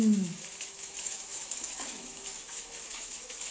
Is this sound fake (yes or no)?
yes